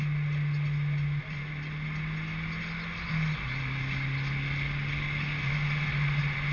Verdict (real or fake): real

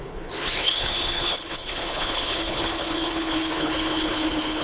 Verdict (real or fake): fake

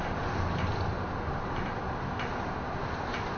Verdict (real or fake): real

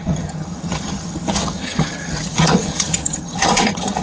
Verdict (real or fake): fake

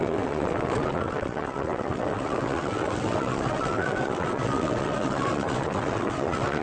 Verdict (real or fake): fake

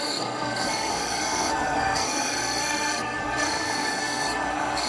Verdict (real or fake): fake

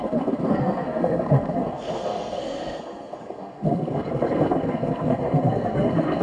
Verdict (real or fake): fake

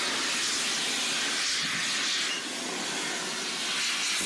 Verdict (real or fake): real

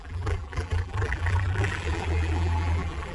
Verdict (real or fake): fake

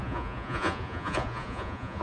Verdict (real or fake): fake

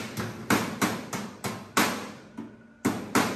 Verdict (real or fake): real